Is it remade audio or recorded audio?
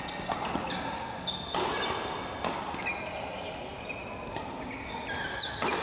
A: recorded